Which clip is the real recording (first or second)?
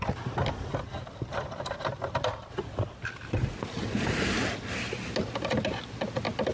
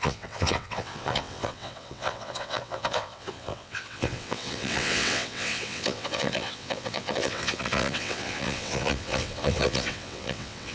first